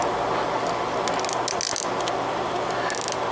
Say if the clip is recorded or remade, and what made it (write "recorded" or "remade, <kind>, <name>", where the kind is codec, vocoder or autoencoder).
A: recorded